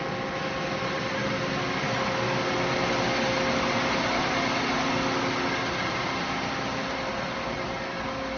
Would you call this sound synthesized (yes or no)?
no